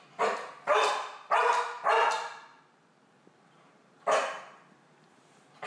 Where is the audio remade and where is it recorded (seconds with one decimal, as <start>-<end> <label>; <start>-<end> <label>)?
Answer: 0.0-2.5 recorded; 2.5-5.2 remade; 5.2-5.7 recorded